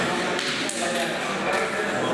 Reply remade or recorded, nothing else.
recorded